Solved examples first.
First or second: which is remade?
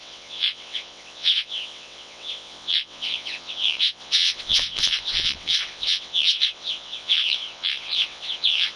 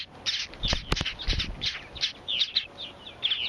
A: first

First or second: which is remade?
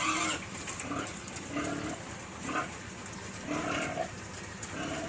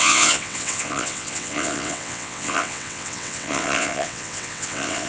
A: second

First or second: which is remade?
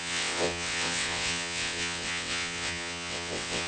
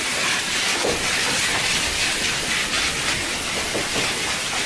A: first